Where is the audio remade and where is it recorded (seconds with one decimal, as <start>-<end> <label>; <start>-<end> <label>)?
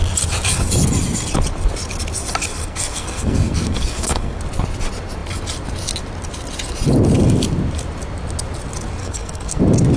0.0-2.6 recorded; 2.6-4.4 remade; 4.4-9.0 recorded; 9.0-9.6 remade; 9.6-10.0 recorded